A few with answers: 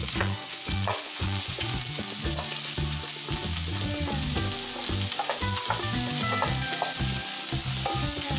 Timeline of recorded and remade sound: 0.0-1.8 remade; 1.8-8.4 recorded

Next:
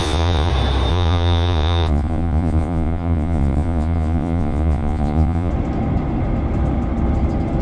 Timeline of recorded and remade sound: 0.0-0.5 remade; 0.5-0.9 recorded; 0.9-5.5 remade; 5.5-7.6 recorded

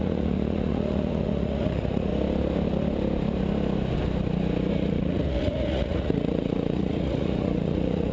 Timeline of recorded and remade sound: 0.0-2.1 remade; 2.1-4.7 recorded; 4.7-8.1 remade